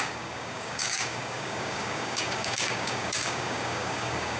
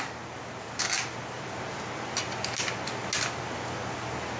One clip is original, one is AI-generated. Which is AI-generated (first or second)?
first